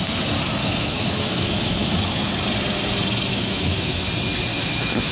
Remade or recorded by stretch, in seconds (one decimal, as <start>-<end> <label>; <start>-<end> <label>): 0.0-0.6 recorded; 0.6-2.3 remade; 2.3-3.3 recorded; 3.3-4.1 remade; 4.1-4.5 recorded; 4.5-5.1 remade